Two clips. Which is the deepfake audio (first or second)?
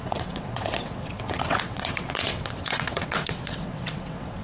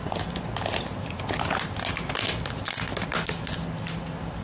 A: first